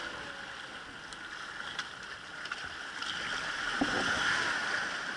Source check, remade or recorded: recorded